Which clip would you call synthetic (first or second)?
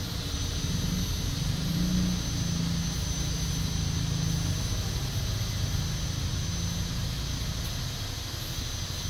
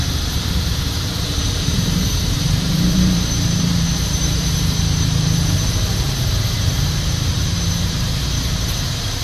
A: second